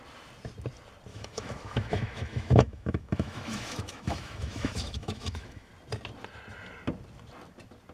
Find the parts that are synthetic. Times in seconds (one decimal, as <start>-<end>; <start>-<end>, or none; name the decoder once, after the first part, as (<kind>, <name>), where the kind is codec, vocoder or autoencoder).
1.1-5.7 (autoencoder, DAC-VAE)